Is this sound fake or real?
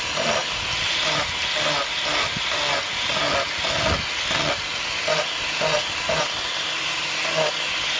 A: real